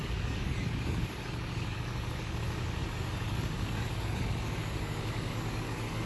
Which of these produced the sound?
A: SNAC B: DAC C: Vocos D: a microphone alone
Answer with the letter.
B